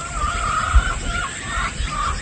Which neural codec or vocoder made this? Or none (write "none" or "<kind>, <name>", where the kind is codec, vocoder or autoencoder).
none